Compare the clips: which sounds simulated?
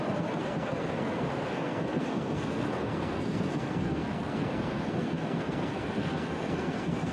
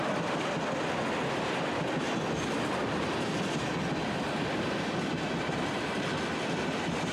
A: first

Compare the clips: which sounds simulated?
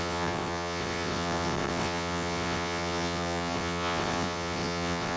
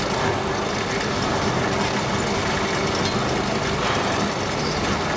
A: first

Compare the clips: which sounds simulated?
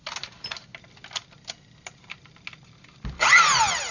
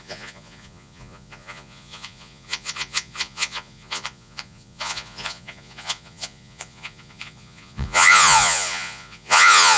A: second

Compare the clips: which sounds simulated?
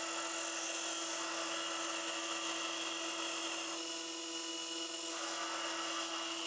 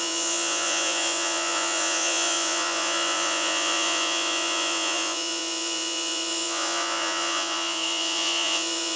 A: second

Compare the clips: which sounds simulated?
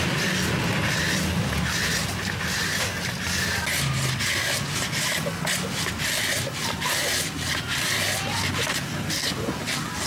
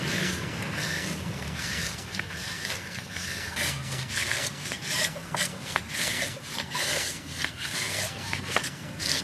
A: second